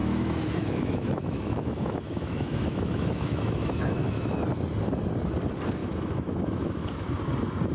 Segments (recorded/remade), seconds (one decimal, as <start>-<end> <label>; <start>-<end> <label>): 0.0-4.4 remade; 4.4-5.8 recorded; 5.8-7.1 remade; 7.1-7.7 recorded